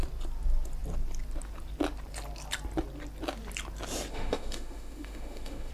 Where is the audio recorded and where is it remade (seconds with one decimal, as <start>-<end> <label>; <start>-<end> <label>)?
0.0-4.1 recorded; 4.1-5.7 remade